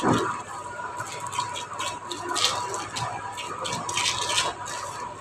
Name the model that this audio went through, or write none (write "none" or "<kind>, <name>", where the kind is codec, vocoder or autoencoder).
none